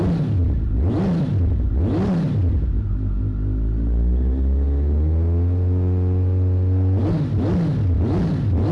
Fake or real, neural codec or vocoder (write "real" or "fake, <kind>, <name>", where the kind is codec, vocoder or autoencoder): real